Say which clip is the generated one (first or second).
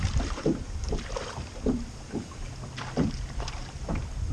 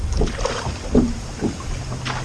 first